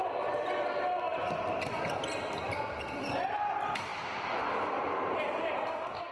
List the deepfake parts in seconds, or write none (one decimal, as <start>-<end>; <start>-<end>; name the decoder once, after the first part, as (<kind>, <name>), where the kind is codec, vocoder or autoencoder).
none